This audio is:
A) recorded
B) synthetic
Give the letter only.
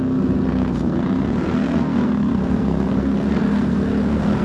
B